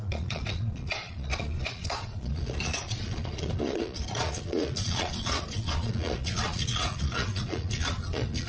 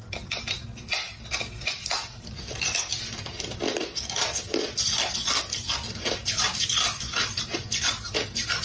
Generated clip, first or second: first